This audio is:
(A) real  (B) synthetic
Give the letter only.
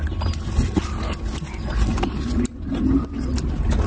A